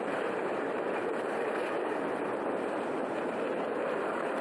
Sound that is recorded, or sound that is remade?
remade